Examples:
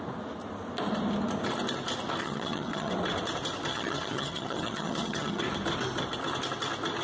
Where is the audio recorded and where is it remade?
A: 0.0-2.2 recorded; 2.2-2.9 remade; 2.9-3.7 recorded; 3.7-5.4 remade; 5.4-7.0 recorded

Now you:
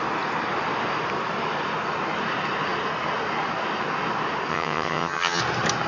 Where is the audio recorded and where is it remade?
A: 0.0-4.5 recorded; 4.5-5.4 remade; 5.4-5.9 recorded

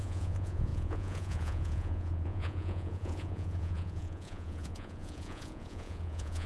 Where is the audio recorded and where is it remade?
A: 0.0-6.5 remade

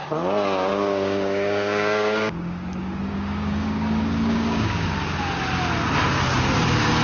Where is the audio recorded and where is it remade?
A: 0.0-0.7 recorded; 0.7-4.9 remade; 4.9-7.0 recorded